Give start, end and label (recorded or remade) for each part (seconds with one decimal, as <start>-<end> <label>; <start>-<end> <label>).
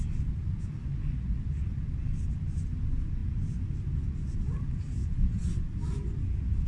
0.0-0.8 recorded; 0.8-1.5 remade; 1.5-5.0 recorded; 5.0-5.6 remade; 5.6-6.7 recorded